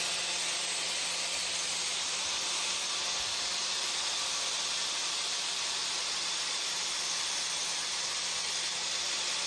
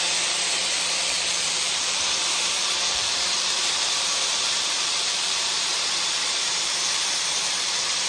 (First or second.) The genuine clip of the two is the first